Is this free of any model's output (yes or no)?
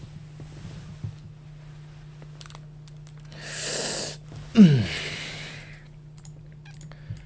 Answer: yes